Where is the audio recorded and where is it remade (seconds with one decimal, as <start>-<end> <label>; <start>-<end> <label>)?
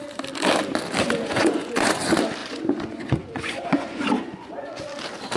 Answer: 0.0-1.0 recorded; 1.0-2.0 remade; 2.0-2.4 recorded; 2.4-4.8 remade; 4.8-5.4 recorded